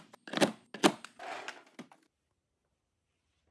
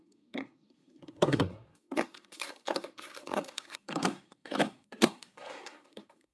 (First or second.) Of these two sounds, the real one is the first